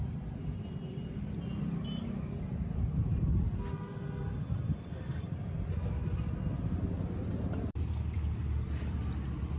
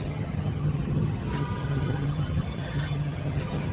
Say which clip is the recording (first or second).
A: first